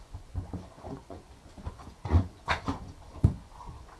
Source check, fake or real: fake